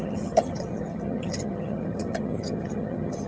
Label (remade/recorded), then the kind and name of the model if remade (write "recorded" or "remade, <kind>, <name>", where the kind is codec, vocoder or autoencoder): remade, vocoder, HiFi-GAN